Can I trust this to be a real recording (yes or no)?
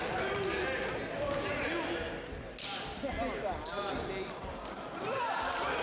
yes